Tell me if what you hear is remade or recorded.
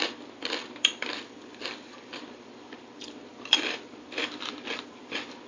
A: remade